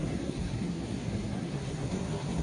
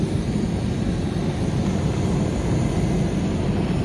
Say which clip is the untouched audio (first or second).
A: second